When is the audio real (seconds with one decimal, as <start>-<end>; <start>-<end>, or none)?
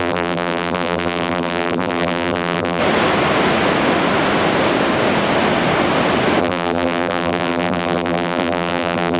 2.8-6.4